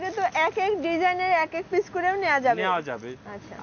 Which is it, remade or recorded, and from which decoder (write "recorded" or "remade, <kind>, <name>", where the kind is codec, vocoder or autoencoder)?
recorded